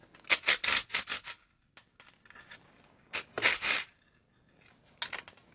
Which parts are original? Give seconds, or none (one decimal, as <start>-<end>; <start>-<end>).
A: 0.0-5.5